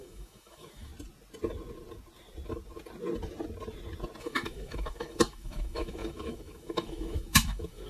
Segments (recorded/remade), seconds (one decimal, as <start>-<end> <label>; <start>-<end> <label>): 0.0-0.9 remade; 0.9-4.2 recorded; 4.2-7.9 remade